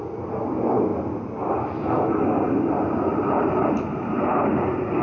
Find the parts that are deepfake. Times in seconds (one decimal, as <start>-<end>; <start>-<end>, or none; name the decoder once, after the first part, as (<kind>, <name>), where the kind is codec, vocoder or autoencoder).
3.1-4.1 (vocoder, BigVGAN v2)